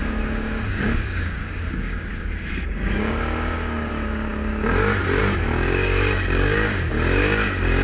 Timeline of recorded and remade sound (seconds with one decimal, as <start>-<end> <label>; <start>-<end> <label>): 0.0-7.8 remade